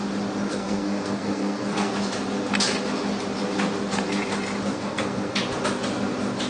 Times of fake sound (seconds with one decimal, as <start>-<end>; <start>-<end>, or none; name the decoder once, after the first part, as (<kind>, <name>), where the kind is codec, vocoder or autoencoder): 0.5-1.9 (codec, SNAC); 4.7-5.4